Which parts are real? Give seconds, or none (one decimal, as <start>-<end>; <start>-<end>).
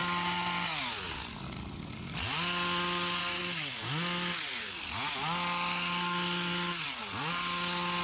0.0-8.0